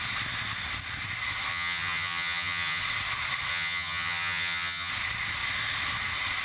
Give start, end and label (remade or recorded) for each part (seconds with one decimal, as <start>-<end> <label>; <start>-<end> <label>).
0.0-1.5 recorded; 1.5-2.8 remade; 2.8-3.5 recorded; 3.5-4.9 remade; 4.9-6.4 recorded